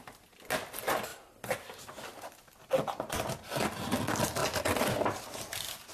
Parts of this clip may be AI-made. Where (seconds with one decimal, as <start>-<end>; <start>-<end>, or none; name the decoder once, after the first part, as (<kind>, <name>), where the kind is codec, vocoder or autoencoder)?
none